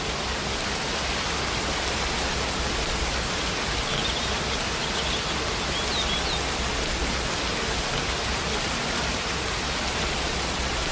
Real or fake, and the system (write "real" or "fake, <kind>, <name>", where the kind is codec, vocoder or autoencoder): real